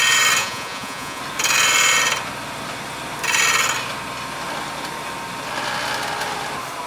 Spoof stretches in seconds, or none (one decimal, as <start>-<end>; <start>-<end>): 0.4-1.2